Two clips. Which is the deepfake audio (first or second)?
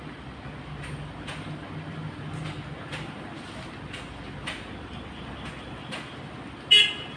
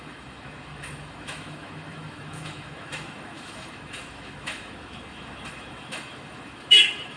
second